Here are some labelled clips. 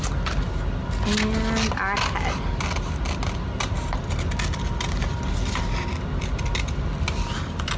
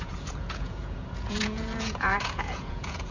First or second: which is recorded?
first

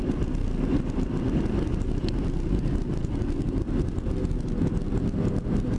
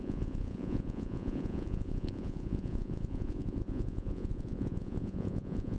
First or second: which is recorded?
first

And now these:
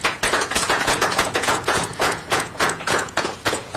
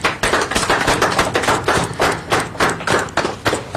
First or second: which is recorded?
second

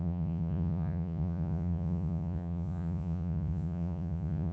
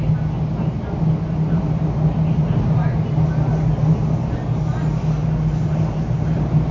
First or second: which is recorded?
second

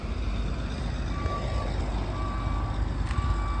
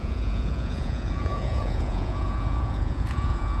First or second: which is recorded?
first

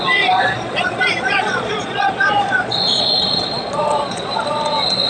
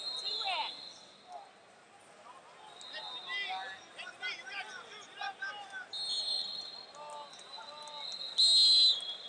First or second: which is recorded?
second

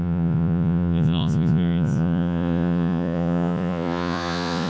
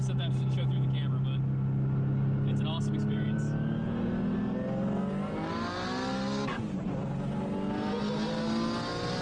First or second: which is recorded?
second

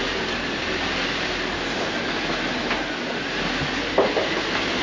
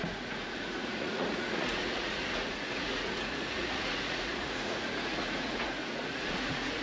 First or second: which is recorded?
first